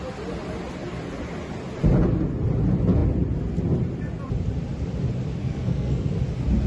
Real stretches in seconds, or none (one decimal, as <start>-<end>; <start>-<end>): 0.0-5.4; 6.1-6.7